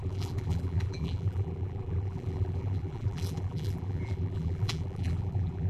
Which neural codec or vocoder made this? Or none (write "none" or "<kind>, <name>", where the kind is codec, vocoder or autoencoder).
vocoder, BigVGAN v2